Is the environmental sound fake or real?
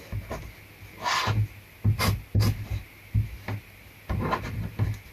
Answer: real